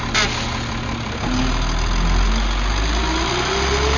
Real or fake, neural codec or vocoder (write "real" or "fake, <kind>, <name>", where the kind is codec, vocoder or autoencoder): real